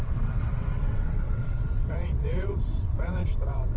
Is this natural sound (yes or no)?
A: no